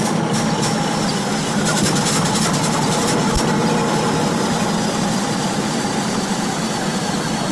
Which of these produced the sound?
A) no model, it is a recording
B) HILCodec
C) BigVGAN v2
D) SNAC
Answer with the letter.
A